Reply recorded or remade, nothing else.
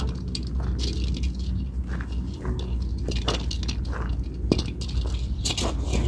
recorded